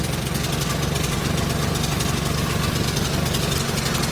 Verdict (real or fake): real